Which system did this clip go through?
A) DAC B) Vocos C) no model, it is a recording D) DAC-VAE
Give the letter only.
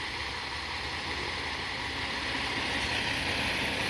C